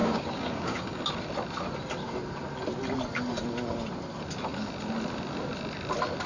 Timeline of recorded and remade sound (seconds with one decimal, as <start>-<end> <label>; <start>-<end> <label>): 0.0-1.0 remade; 1.0-6.3 recorded